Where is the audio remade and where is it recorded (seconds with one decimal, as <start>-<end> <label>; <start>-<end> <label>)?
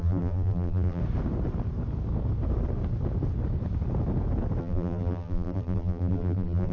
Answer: 0.0-1.0 remade; 1.0-4.6 recorded; 4.6-6.7 remade